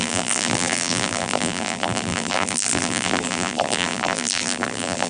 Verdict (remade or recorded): remade